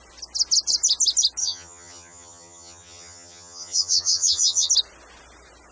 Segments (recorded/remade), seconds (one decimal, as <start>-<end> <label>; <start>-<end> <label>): 0.0-1.4 recorded; 1.4-4.7 remade; 4.7-5.7 recorded